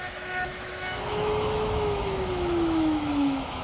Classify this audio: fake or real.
fake